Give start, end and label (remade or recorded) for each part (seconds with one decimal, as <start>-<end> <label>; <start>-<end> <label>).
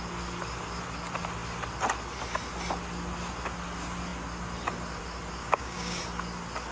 0.0-5.4 recorded; 5.4-6.0 remade; 6.0-6.7 recorded